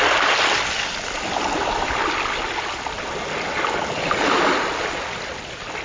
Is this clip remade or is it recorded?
recorded